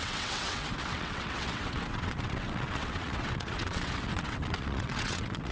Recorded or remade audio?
remade